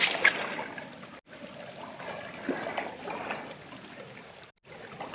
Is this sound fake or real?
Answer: real